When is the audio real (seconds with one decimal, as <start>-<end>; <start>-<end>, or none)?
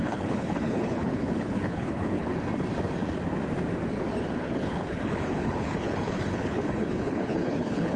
2.3-4.4